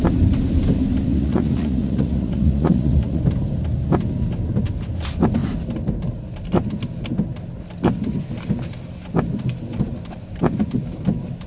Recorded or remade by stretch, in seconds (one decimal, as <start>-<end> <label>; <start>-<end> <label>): 0.0-1.1 recorded; 1.1-3.2 remade; 3.2-11.5 recorded

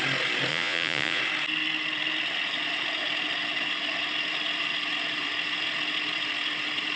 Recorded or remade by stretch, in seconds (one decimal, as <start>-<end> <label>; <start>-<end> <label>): 0.0-0.5 recorded; 0.5-1.2 remade; 1.2-7.0 recorded